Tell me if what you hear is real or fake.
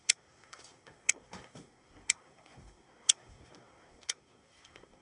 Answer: fake